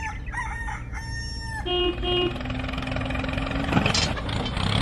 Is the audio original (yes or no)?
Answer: yes